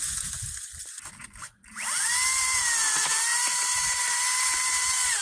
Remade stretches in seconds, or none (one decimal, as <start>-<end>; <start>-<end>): 3.3-4.0